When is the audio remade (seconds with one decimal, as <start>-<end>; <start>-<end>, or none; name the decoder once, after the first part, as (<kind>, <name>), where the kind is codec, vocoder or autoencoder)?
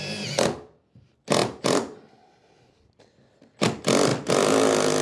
none